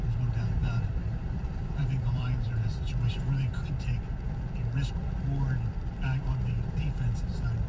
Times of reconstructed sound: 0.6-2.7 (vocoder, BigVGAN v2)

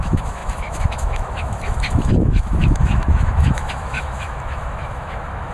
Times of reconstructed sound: 0.0-5.5 (autoencoder, DAC-VAE)

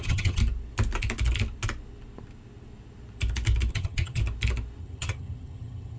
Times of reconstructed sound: 0.0-0.4 (vocoder, HiFi-GAN); 3.7-4.2; 4.8-6.0

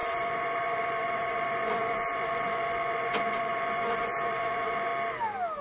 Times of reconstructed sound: 0.0-4.9 (vocoder, Vocos)

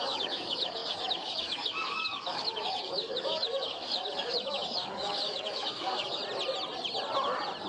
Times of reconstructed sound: 0.0-6.2 (codec, DAC)